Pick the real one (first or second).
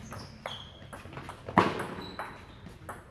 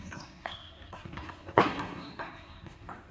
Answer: first